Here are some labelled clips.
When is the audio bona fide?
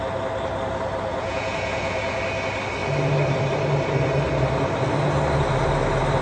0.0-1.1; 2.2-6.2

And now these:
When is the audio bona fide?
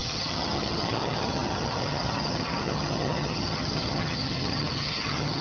none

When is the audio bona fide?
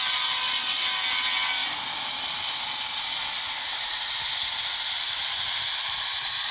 0.0-6.5